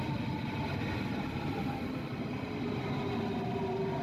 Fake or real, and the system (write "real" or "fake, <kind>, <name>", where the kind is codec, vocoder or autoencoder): real